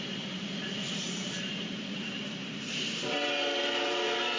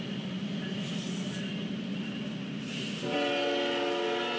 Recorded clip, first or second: second